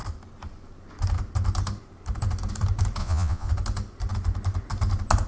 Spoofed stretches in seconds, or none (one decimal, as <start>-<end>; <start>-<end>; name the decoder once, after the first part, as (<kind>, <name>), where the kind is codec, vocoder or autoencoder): 3.0-3.5 (vocoder, Vocos)